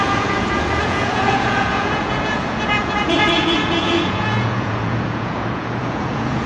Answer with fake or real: fake